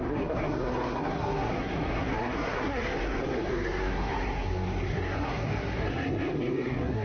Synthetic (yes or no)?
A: yes